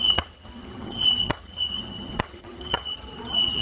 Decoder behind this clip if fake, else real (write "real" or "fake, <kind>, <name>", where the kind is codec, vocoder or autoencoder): fake, vocoder, HiFi-GAN